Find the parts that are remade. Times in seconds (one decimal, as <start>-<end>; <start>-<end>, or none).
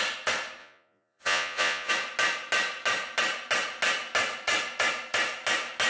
0.6-1.9